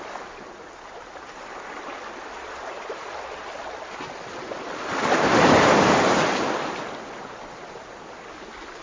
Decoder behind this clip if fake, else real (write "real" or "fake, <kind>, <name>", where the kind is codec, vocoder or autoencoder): real